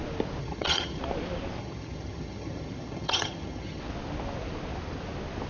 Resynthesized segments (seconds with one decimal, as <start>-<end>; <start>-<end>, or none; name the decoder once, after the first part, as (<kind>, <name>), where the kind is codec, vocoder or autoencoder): 0.4-1.0 (vocoder, HiFi-GAN); 1.6-3.8